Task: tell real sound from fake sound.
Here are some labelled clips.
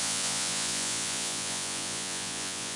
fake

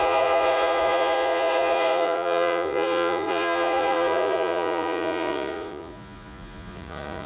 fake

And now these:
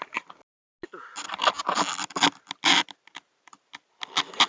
real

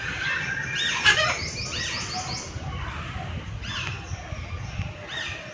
real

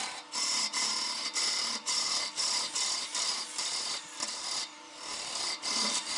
real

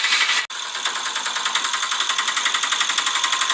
real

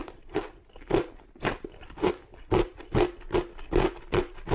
real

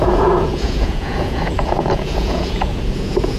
fake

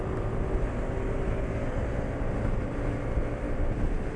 real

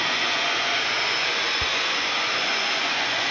fake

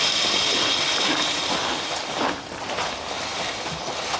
real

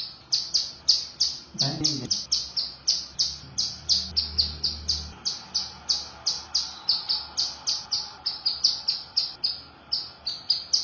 real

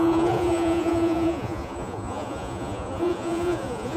fake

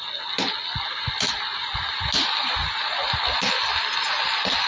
real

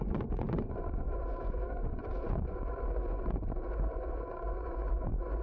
fake